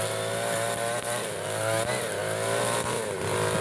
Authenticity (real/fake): real